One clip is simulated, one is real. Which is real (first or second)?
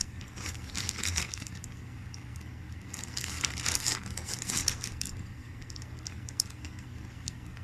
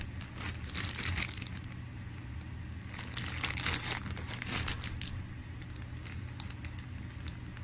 second